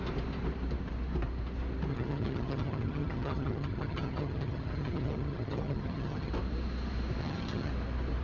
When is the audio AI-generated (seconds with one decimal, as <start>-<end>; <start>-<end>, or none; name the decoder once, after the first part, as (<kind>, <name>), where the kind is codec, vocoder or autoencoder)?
1.9-6.3 (vocoder, HiFi-GAN); 7.2-7.7